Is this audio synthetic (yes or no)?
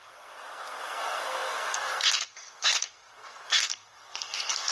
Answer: yes